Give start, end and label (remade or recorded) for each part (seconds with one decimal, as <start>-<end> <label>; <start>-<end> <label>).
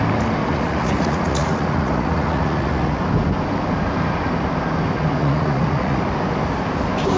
0.0-0.4 recorded; 0.4-3.0 remade; 3.0-5.2 recorded; 5.2-6.0 remade; 6.0-7.2 recorded